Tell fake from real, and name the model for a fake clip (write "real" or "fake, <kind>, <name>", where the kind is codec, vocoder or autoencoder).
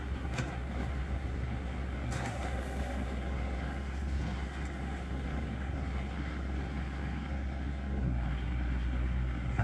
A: fake, codec, SNAC